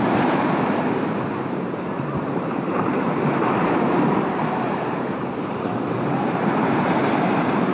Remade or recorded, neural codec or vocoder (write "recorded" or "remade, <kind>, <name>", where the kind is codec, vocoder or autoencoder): remade, vocoder, BigVGAN v2